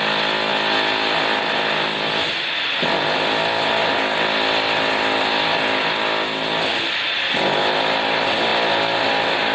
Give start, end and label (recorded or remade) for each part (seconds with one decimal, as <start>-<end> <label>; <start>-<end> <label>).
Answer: 0.0-9.5 recorded